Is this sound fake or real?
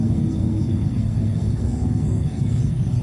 fake